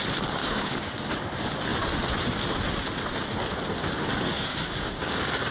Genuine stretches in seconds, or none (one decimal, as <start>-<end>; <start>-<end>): 0.0-0.4; 1.1-4.5; 5.1-5.5